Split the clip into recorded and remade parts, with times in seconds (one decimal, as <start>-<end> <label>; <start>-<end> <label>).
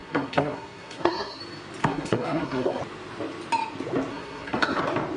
0.0-1.4 remade; 1.4-1.8 recorded; 1.8-2.8 remade; 2.8-4.1 recorded; 4.1-4.8 remade; 4.8-5.2 recorded